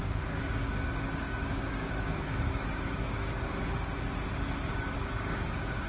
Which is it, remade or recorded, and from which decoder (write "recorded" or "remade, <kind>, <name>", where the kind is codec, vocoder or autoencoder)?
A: remade, codec, DAC